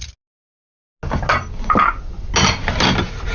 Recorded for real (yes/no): yes